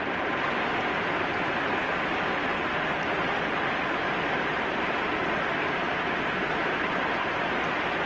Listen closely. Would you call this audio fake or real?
real